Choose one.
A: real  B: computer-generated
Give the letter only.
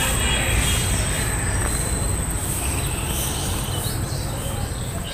A